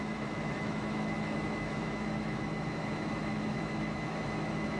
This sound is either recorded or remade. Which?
remade